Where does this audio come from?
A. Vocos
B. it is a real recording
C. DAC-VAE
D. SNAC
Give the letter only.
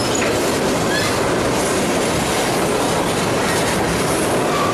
B